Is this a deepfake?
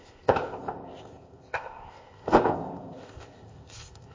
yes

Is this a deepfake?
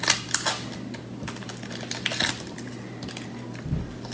no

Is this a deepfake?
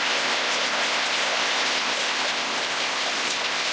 yes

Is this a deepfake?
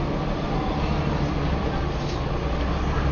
no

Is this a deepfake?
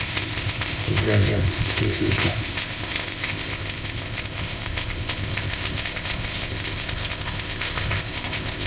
yes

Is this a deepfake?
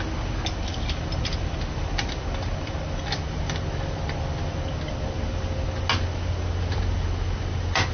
no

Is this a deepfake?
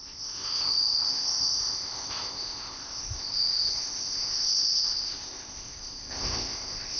yes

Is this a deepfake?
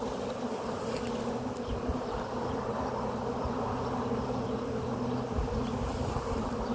no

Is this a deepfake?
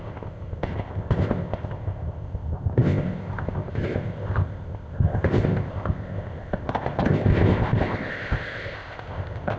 yes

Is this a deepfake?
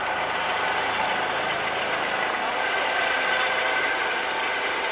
no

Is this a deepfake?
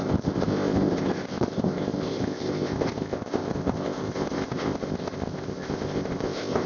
yes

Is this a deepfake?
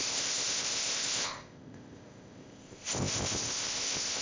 yes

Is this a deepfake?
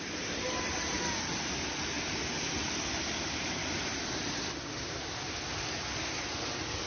no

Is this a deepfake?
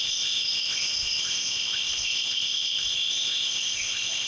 yes